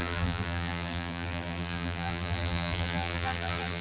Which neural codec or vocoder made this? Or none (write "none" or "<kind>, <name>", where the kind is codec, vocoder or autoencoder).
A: vocoder, BigVGAN v2